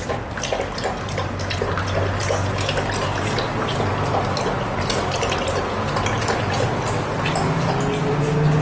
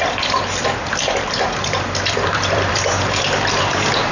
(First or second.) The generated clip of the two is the second